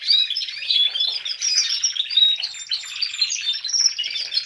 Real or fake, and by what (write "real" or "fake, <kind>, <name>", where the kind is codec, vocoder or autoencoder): fake, vocoder, BigVGAN v2